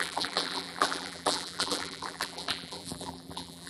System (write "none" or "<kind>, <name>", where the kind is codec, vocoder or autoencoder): vocoder, BigVGAN v2